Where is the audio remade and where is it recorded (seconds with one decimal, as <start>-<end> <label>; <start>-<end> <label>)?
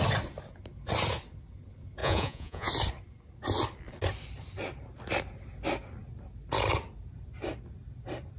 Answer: 0.0-2.0 recorded; 2.0-2.7 remade; 2.7-8.4 recorded